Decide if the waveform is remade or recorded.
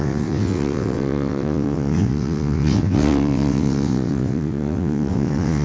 remade